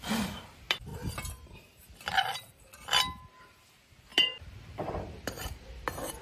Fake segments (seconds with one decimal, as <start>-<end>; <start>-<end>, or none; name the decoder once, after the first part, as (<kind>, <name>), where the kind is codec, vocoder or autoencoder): none